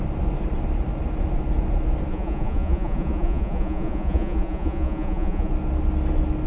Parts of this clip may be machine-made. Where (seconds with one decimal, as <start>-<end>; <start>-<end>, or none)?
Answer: 2.1-5.5